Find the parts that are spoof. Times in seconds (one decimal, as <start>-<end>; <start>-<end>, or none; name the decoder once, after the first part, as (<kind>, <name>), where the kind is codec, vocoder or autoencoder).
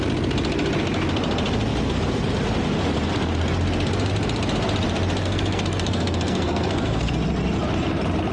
5.2-7.1 (codec, SNAC)